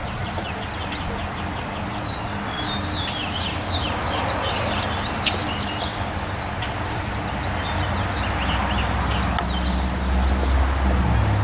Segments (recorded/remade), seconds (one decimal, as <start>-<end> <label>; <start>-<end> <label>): 0.0-0.5 remade; 0.5-11.4 recorded